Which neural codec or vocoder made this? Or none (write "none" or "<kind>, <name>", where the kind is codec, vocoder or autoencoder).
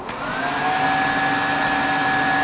none